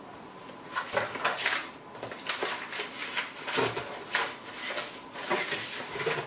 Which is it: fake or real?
real